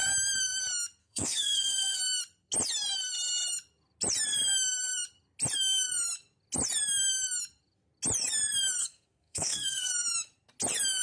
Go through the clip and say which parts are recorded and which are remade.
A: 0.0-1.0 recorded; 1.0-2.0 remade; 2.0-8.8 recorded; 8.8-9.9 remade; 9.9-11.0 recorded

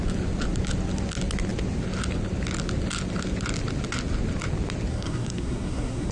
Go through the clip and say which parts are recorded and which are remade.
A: 0.0-4.9 recorded; 4.9-6.1 remade

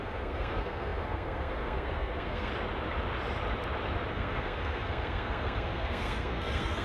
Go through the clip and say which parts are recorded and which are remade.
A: 0.0-2.5 remade; 2.5-4.1 recorded; 4.1-6.8 remade

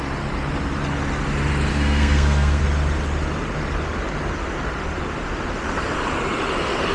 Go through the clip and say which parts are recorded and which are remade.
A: 0.0-1.7 recorded; 1.7-2.6 remade; 2.6-6.9 recorded

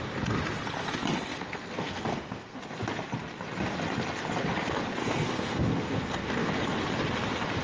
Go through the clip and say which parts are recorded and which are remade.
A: 0.0-1.3 recorded; 1.3-2.6 remade; 2.6-5.0 recorded; 5.0-6.5 remade; 6.5-7.6 recorded